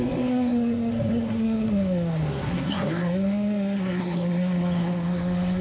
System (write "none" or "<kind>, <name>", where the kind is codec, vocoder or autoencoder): codec, SNAC